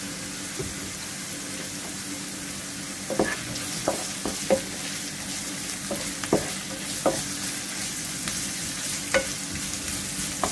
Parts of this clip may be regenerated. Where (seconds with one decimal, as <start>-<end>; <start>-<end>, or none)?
3.3-3.9; 7.8-8.7